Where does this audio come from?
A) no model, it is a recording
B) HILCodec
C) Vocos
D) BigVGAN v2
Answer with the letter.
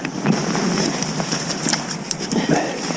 D